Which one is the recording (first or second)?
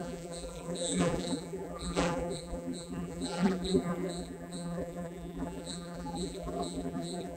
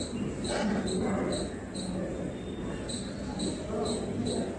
second